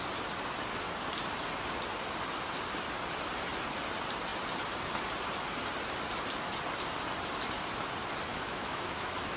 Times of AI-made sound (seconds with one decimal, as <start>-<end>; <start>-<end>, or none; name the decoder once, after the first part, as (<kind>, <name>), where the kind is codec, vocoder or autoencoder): 8.3-9.4 (autoencoder, DAC-VAE)